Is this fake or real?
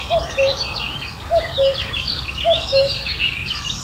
fake